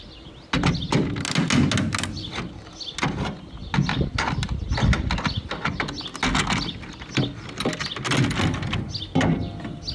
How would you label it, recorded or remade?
recorded